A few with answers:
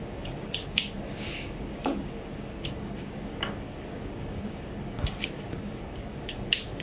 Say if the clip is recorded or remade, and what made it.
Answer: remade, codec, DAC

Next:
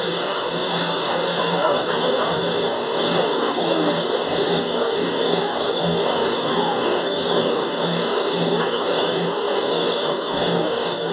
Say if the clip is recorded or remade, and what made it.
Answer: remade, codec, DAC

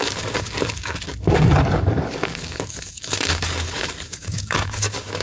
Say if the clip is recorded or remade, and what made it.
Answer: remade, codec, DAC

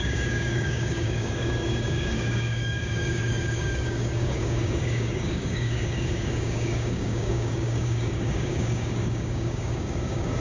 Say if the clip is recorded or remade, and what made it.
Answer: remade, codec, DAC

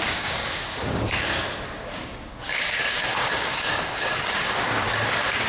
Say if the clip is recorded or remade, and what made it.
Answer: remade, codec, DAC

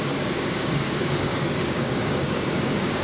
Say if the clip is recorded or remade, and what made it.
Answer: remade, codec, DAC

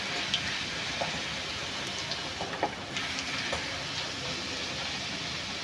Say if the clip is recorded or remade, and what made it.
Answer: recorded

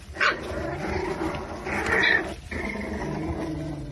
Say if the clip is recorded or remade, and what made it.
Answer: recorded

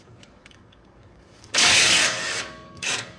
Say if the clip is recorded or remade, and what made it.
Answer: remade, codec, DAC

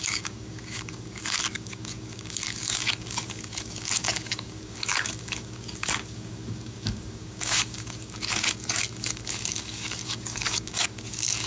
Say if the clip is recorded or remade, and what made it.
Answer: remade, codec, DAC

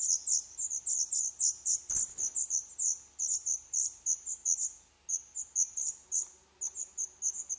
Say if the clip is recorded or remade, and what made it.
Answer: recorded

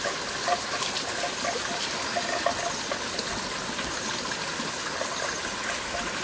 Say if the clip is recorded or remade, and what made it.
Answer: recorded